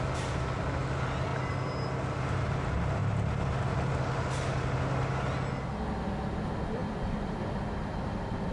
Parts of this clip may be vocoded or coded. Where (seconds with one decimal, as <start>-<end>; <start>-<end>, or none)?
none